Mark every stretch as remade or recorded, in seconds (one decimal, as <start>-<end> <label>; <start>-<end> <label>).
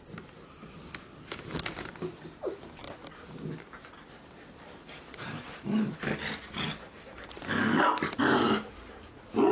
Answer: 0.0-9.5 recorded